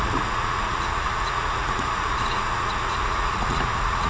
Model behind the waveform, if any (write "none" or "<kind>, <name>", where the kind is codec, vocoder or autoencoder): vocoder, Vocos